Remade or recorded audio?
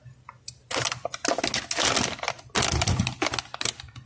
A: recorded